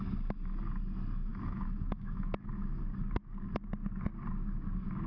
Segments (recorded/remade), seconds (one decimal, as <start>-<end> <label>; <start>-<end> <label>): 0.0-1.3 recorded; 1.3-2.8 remade; 2.8-5.1 recorded